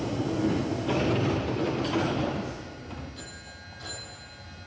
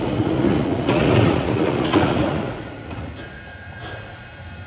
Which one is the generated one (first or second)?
second